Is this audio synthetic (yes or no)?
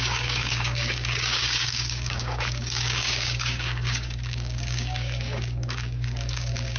yes